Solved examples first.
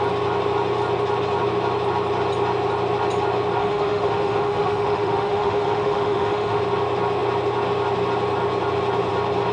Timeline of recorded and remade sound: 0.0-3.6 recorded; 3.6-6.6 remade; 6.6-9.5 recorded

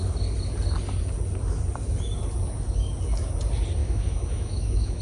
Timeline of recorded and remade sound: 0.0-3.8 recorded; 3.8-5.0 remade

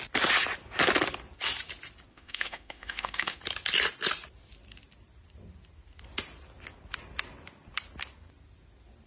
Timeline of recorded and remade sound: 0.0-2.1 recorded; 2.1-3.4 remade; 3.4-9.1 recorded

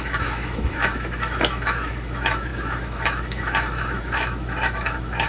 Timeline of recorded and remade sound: 0.0-5.3 remade